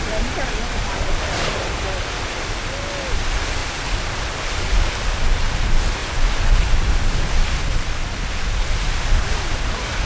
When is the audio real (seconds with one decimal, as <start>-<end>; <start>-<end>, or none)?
0.0-6.0; 6.6-10.1